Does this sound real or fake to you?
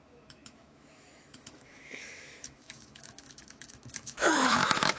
fake